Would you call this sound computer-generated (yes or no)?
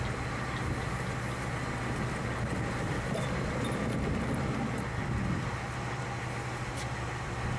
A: no